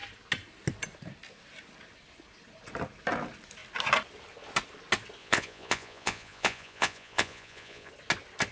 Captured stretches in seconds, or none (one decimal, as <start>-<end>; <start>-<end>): 0.0-5.2; 7.9-8.5